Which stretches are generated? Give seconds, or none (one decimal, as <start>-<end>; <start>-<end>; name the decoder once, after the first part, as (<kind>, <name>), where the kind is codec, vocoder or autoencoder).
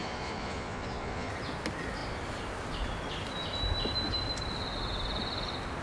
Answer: 0.0-1.3 (vocoder, Vocos)